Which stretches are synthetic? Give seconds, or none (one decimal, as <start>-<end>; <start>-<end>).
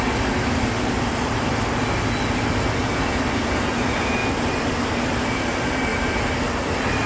none